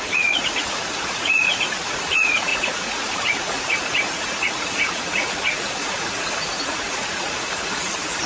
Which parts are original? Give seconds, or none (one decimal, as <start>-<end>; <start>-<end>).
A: none